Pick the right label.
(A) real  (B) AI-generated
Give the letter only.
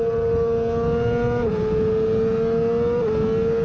A